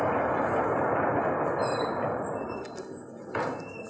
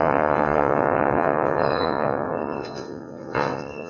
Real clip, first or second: first